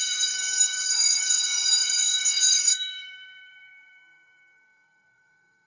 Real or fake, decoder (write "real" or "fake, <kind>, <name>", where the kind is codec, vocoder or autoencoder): fake, codec, SNAC